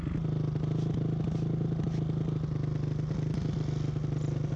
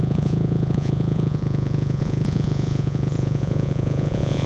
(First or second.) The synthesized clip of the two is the second